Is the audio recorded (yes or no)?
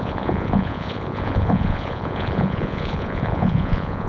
no